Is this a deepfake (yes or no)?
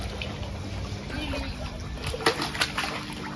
no